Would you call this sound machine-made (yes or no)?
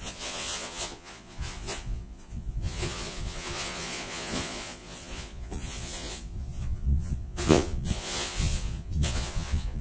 yes